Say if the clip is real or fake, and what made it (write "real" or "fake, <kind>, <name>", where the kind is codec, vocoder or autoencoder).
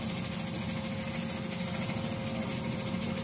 real